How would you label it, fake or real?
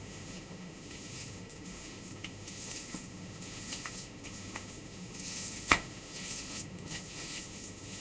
fake